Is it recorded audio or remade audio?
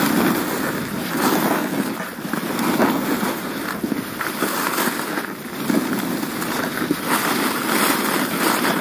recorded